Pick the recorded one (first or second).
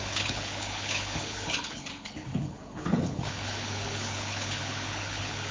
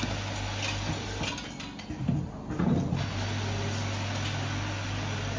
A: second